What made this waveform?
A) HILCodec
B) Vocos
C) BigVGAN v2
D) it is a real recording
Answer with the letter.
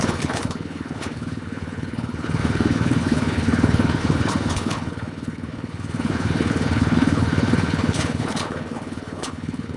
A